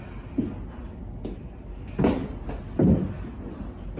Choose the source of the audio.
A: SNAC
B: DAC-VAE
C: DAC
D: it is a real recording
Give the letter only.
D